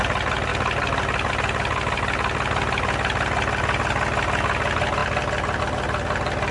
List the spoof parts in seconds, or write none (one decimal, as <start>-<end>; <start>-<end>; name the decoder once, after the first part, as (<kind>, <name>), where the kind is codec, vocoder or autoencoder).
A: none